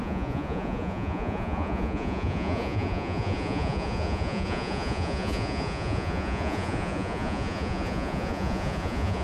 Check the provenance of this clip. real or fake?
fake